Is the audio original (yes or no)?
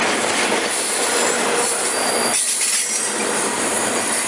yes